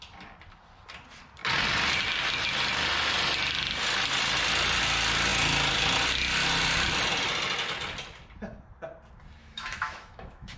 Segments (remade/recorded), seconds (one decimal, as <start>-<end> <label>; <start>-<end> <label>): 0.0-9.4 recorded; 9.4-10.6 remade